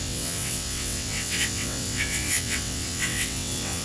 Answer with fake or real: fake